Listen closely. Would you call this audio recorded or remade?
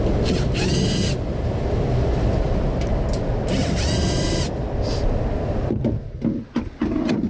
recorded